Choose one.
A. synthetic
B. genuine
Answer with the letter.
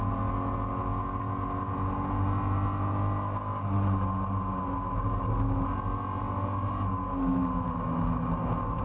B